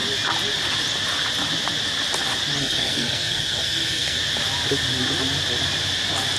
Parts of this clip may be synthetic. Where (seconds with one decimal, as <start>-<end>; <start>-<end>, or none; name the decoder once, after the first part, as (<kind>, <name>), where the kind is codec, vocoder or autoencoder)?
2.6-4.2 (codec, SNAC)